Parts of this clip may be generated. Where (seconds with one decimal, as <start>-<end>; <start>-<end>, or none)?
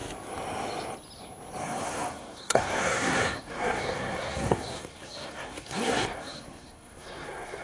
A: 1.6-7.6